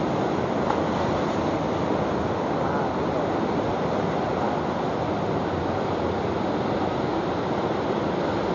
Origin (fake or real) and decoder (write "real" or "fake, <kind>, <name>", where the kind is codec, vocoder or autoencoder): real